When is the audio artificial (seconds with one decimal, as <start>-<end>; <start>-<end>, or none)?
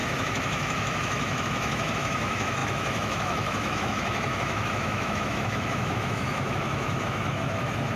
0.0-8.0